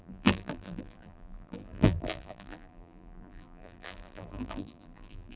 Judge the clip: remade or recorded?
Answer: remade